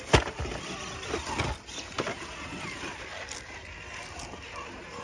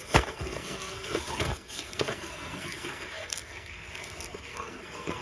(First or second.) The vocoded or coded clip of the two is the second